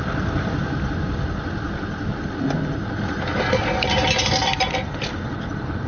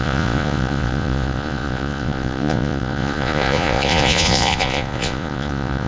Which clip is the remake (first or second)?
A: second